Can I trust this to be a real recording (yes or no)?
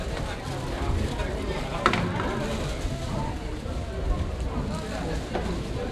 yes